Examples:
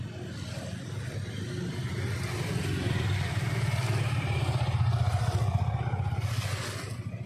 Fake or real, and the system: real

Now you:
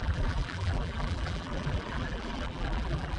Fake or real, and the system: fake, vocoder, BigVGAN v2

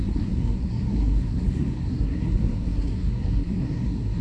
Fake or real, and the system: fake, codec, SNAC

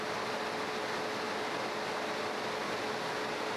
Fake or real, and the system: real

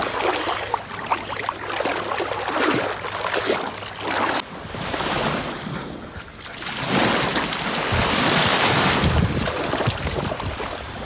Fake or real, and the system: real